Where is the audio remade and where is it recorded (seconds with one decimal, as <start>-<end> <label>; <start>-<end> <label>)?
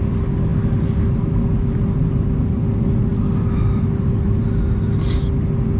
0.0-5.8 recorded